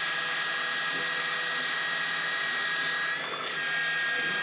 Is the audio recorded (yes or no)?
yes